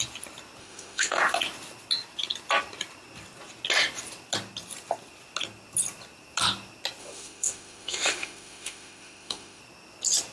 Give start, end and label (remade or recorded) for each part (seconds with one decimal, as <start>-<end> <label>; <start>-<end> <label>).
0.0-0.6 recorded; 0.6-1.2 remade; 1.2-7.0 recorded; 7.0-9.6 remade; 9.6-10.3 recorded